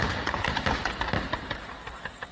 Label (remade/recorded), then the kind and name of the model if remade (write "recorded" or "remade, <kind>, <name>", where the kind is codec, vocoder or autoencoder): recorded